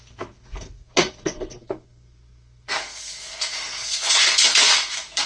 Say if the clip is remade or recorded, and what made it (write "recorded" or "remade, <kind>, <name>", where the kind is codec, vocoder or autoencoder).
remade, codec, SNAC